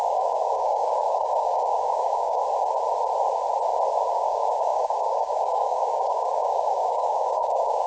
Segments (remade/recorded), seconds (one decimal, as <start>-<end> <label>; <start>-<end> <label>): 0.0-2.4 remade; 2.4-4.1 recorded; 4.1-7.9 remade